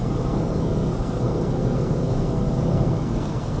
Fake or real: fake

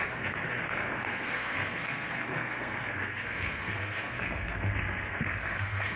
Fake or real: fake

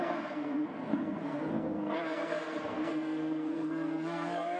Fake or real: fake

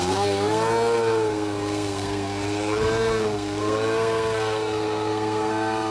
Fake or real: fake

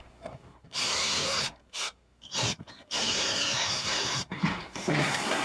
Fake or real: fake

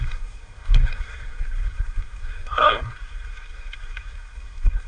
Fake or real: fake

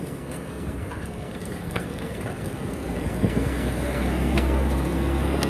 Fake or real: fake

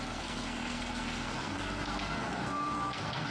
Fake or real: fake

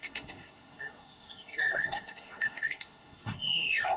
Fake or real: fake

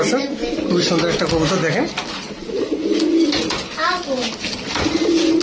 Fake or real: real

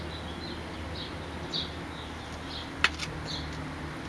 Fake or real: real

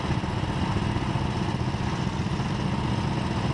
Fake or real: real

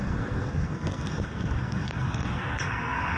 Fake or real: fake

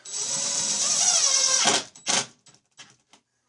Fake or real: real